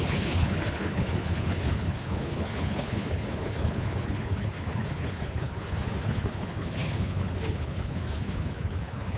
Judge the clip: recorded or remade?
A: remade